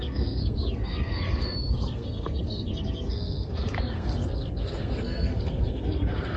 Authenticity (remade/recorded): remade